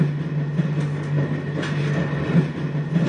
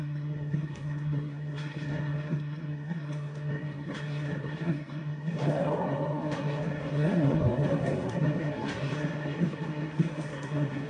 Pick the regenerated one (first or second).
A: second